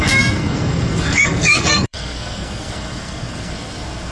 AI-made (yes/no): yes